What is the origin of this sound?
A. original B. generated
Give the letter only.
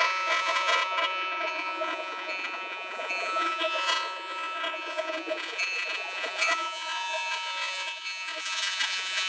B